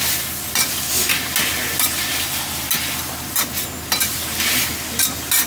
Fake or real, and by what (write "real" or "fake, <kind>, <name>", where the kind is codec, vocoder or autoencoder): real